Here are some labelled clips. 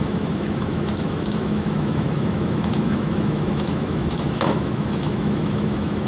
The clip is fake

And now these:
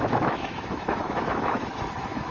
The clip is fake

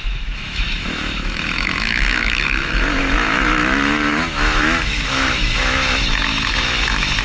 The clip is fake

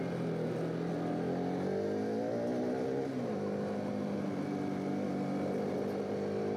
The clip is real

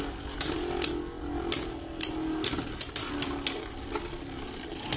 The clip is real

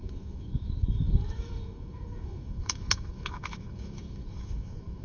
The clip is fake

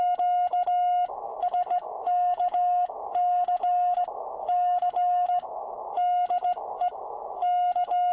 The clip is fake